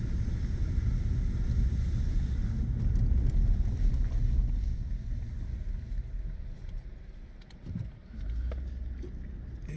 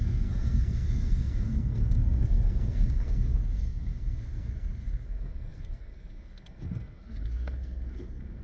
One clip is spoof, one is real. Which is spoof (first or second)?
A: second